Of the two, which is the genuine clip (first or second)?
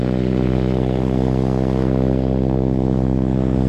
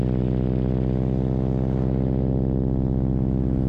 second